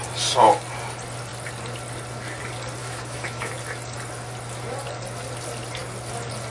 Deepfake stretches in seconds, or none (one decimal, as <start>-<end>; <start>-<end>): 2.8-3.5